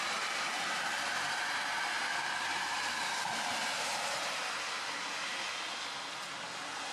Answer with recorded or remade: recorded